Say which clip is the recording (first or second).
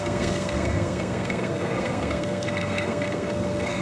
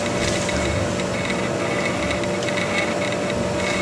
second